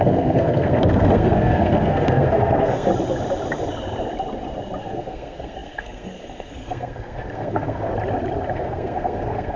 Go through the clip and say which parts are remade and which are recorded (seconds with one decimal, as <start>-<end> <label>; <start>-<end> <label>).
0.0-2.9 remade; 2.9-4.8 recorded; 4.8-7.9 remade; 7.9-8.5 recorded; 8.5-9.6 remade